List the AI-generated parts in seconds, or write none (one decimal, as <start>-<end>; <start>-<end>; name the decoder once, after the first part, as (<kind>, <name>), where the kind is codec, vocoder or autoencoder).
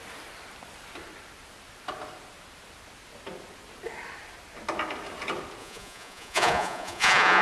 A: 5.6-7.4 (vocoder, Vocos)